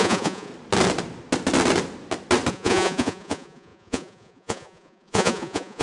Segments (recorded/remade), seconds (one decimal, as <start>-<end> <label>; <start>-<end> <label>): 0.0-0.5 remade; 0.5-2.5 recorded; 2.5-5.8 remade